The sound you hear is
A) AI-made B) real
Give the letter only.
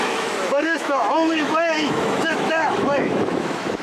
A